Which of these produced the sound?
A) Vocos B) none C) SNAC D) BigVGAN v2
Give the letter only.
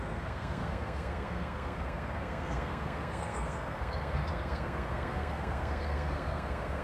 C